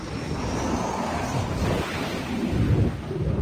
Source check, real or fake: real